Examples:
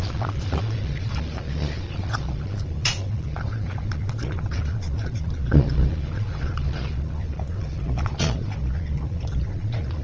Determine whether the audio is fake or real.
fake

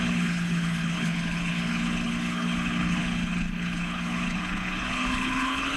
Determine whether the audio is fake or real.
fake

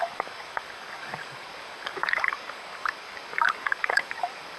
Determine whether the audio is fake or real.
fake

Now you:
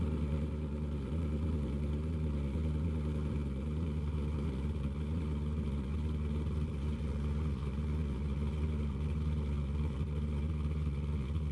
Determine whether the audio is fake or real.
fake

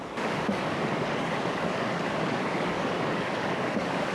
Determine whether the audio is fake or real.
fake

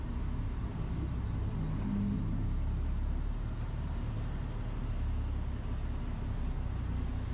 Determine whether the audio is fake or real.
real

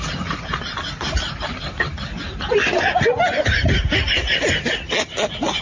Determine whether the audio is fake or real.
real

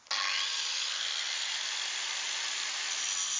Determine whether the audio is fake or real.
real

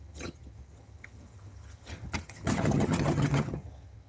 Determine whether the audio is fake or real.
fake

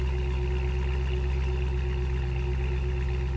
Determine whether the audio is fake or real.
real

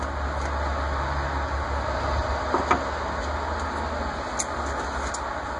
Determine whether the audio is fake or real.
real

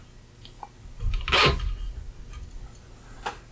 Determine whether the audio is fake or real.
real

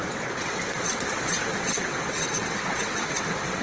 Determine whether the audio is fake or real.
fake